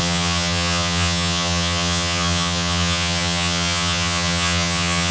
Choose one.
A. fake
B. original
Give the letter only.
A